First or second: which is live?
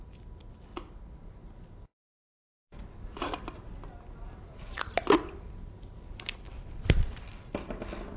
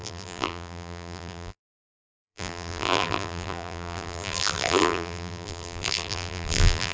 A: first